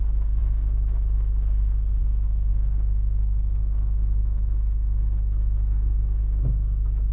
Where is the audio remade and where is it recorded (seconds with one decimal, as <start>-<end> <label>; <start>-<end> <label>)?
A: 0.0-7.1 remade